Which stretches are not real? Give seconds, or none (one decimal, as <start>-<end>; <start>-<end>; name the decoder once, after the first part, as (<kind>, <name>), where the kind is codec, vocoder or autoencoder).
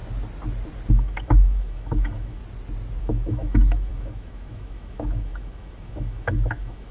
0.9-2.4 (autoencoder, DAC-VAE); 3.0-6.9